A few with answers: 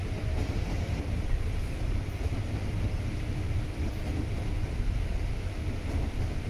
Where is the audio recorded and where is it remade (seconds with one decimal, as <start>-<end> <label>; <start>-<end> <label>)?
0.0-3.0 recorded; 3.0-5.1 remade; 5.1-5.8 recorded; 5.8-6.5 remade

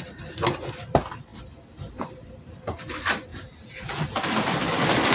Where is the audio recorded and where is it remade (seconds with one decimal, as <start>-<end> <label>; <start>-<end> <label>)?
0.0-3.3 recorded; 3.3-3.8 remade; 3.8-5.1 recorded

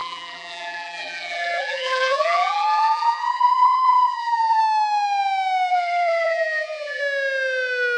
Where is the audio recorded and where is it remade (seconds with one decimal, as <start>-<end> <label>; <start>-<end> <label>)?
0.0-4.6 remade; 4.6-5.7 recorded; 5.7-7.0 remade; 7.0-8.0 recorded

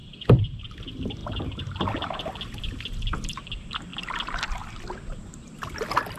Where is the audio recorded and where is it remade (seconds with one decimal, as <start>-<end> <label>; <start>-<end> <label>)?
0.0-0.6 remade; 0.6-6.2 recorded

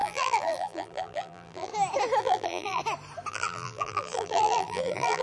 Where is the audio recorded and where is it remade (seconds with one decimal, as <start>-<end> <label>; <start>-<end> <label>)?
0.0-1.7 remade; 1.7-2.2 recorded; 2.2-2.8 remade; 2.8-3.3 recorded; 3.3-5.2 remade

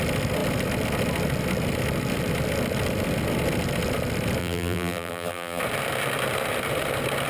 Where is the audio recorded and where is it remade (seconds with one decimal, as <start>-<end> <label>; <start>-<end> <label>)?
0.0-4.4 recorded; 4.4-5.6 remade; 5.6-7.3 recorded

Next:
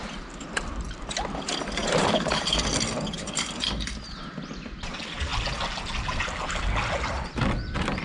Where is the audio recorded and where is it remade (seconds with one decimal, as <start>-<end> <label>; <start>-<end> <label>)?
0.0-5.3 remade; 5.3-6.9 recorded; 6.9-8.0 remade

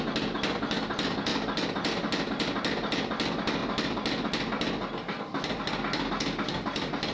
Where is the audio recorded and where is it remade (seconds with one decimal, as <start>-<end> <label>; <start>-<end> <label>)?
0.0-7.1 recorded